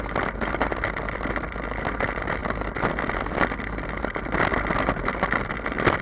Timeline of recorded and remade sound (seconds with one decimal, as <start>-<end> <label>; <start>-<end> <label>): 0.0-6.0 recorded